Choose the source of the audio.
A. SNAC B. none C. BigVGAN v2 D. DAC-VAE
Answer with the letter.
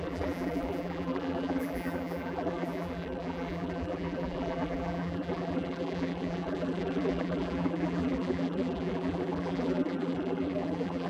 C